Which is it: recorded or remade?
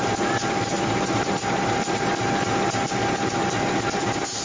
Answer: recorded